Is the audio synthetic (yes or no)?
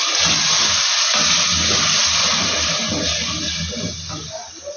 no